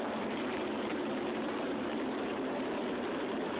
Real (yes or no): no